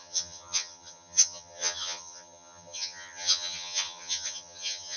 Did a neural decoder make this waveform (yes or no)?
yes